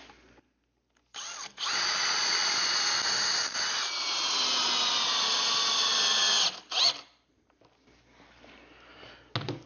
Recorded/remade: recorded